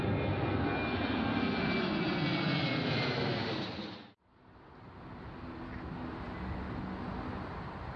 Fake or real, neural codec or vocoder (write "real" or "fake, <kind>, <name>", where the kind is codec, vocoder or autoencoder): real